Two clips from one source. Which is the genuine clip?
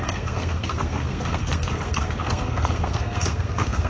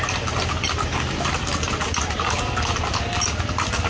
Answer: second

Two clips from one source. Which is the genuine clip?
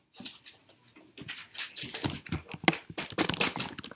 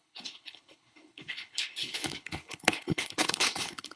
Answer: first